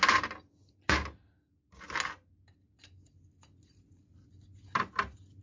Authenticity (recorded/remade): recorded